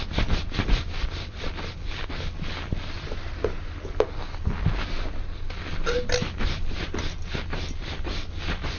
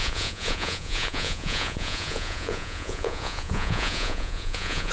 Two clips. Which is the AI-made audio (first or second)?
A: second